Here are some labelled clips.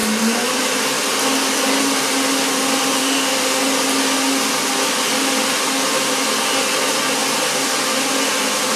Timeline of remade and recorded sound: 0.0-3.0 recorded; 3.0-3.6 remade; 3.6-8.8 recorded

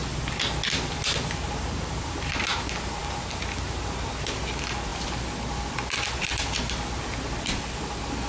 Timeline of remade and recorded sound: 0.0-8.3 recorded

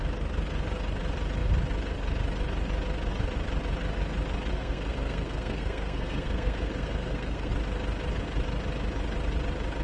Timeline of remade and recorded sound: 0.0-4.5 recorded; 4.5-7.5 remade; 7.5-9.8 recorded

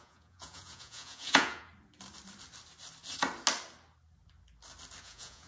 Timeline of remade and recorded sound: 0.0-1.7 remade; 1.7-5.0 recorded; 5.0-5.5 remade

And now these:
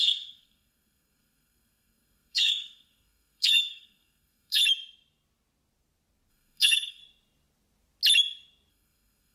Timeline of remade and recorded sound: 0.0-4.6 remade; 4.6-6.3 recorded; 6.3-7.0 remade; 7.0-8.7 recorded; 8.7-9.3 remade

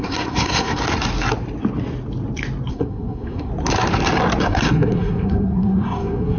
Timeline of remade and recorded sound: 0.0-0.8 remade; 0.8-2.7 recorded; 2.7-3.5 remade; 3.5-4.4 recorded; 4.4-6.4 remade